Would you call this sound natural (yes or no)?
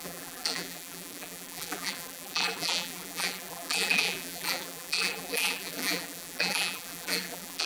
no